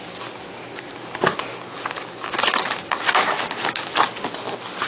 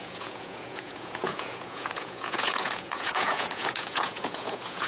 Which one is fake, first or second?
second